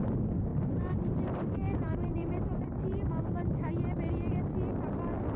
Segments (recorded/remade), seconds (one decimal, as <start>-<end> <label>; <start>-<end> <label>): 0.0-0.5 recorded; 0.5-3.7 remade; 3.7-5.4 recorded

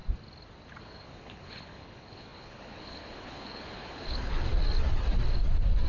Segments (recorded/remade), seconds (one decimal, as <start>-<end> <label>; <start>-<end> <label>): 0.0-0.8 recorded; 0.8-4.5 remade; 4.5-5.9 recorded